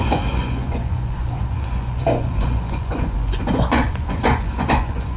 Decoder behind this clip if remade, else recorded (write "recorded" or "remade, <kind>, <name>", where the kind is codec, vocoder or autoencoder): remade, vocoder, Vocos